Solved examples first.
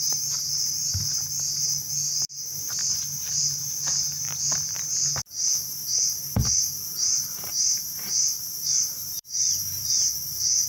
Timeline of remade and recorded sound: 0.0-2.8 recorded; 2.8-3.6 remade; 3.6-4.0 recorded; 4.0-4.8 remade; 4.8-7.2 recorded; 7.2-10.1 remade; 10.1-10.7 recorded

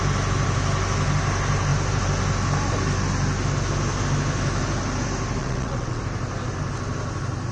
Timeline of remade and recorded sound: 0.0-5.4 recorded; 5.4-6.0 remade; 6.0-7.5 recorded

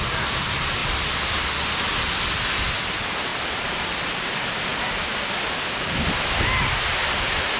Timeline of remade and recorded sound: 0.0-7.6 recorded

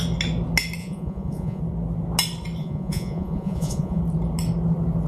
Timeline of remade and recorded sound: 0.0-0.8 recorded; 0.8-1.6 remade; 1.6-2.6 recorded; 2.6-4.0 remade; 4.0-5.1 recorded

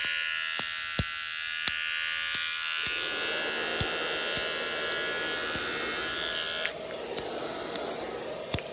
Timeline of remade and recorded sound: 0.0-8.7 recorded

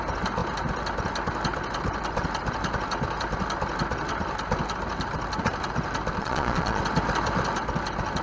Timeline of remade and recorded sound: 0.0-6.2 recorded; 6.2-6.8 remade; 6.8-8.2 recorded